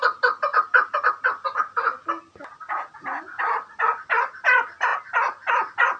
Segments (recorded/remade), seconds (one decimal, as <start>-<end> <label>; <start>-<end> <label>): 0.0-6.0 recorded